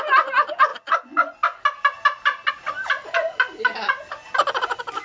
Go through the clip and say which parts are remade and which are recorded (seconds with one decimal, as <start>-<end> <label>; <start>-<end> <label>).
0.0-5.0 recorded